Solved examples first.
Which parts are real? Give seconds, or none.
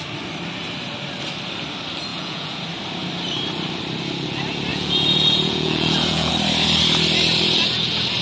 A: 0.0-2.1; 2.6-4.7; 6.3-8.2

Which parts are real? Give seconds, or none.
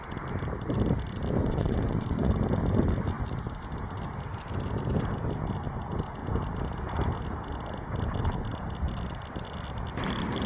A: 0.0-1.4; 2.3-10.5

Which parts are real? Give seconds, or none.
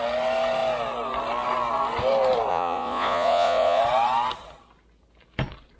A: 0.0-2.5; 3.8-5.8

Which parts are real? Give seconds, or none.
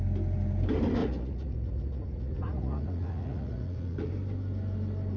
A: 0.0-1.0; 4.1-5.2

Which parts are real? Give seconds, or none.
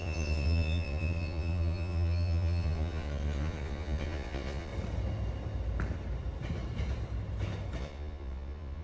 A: 4.7-7.8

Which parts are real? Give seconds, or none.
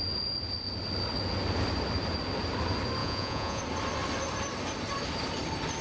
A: 0.0-3.0; 3.6-5.8